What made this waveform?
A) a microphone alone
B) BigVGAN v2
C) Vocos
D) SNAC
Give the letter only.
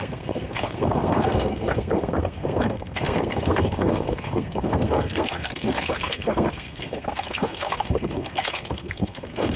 D